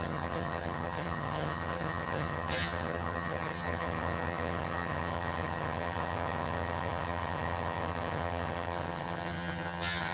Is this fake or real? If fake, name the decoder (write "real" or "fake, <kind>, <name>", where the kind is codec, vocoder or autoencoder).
fake, vocoder, HiFi-GAN